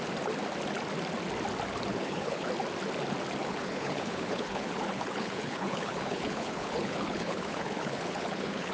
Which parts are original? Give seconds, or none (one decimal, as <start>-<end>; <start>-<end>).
0.0-1.9; 2.5-3.4